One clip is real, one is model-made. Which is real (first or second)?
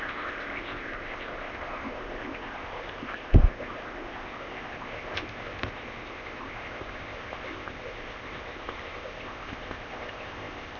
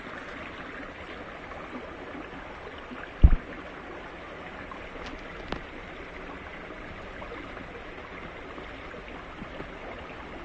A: second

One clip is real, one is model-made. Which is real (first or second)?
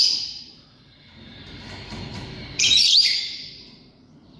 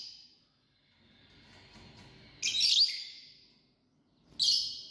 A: second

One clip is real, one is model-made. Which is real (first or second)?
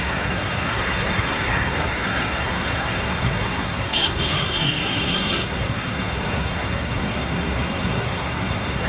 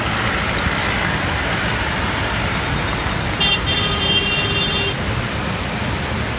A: second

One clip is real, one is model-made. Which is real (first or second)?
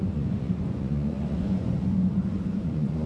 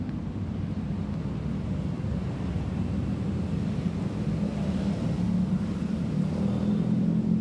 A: second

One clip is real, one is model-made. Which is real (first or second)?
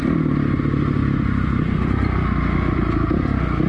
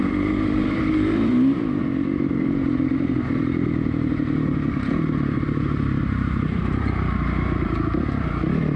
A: first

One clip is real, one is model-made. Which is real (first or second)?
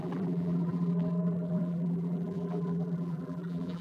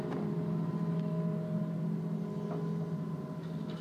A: second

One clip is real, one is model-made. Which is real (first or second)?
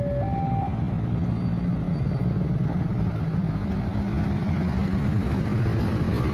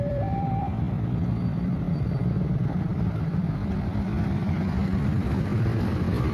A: first